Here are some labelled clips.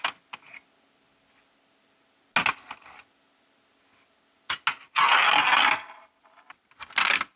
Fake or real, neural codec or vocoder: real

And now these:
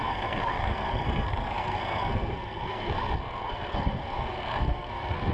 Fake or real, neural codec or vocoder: fake, codec, SNAC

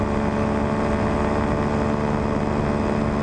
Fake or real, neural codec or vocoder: real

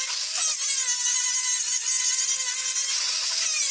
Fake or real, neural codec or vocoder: real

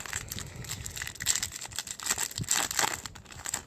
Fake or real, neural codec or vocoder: real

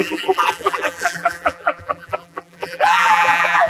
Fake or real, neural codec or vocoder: fake, vocoder, BigVGAN v2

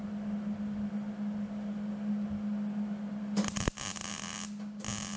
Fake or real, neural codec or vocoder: real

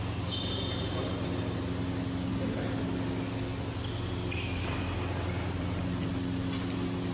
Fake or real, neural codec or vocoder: real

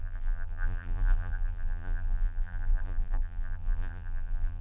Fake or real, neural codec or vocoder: fake, vocoder, BigVGAN v2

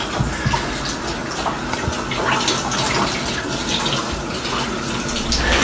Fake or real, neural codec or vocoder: real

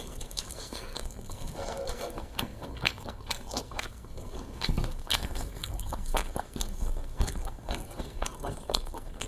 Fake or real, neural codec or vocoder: fake, codec, SNAC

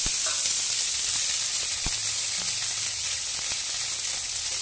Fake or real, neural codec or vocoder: real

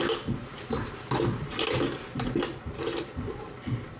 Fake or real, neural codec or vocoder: real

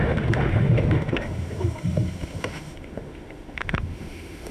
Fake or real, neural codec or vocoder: fake, autoencoder, DAC-VAE